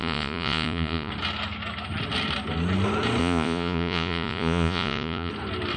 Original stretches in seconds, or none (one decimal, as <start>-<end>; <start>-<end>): 1.1-3.2; 5.3-5.8